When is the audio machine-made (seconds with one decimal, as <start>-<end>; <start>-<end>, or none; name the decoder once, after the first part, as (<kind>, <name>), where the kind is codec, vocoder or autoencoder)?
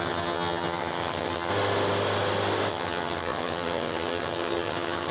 0.0-1.5 (vocoder, HiFi-GAN); 2.7-5.1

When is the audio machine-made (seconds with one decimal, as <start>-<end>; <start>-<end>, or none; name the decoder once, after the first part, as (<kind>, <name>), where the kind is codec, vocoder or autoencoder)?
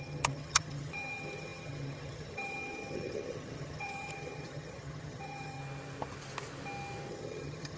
0.0-5.6 (vocoder, HiFi-GAN); 7.1-7.8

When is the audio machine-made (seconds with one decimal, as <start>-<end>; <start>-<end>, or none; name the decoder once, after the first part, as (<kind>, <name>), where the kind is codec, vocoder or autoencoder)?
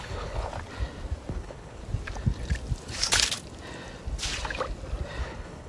0.0-0.5 (codec, HILCodec); 1.3-1.8; 5.2-5.7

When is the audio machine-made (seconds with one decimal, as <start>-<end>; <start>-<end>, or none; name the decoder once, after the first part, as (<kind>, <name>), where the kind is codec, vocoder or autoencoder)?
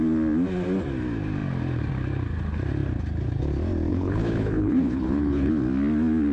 3.9-5.5 (codec, HILCodec)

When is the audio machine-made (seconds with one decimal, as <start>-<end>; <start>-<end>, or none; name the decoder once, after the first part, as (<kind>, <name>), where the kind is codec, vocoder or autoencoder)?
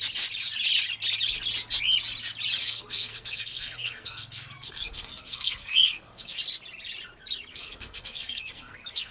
2.6-6.4 (codec, SNAC); 7.5-9.1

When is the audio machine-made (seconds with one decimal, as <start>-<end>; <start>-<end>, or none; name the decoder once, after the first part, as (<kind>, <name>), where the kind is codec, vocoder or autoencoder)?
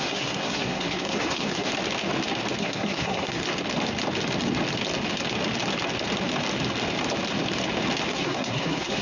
0.0-1.7 (codec, SNAC); 2.6-3.4; 8.1-9.0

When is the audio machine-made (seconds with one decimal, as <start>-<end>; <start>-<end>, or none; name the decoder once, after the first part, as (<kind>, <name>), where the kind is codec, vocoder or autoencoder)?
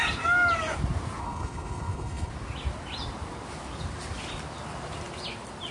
1.2-2.3 (codec, HILCodec)